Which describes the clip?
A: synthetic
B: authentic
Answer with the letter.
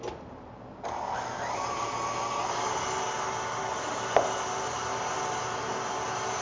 B